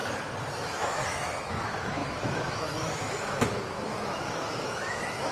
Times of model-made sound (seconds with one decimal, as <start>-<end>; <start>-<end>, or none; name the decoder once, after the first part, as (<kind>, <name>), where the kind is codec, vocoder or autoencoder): 0.5-5.3 (autoencoder, DAC-VAE)